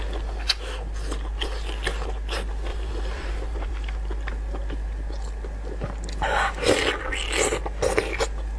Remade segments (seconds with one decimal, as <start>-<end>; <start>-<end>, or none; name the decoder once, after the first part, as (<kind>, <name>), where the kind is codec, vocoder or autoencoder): 2.7-3.7 (vocoder, BigVGAN v2)